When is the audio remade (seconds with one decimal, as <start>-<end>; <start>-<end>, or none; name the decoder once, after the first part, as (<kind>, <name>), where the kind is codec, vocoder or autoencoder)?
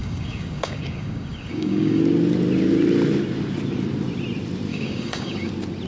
0.0-2.0 (codec, DAC); 4.7-5.5